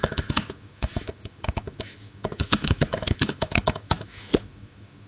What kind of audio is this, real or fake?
fake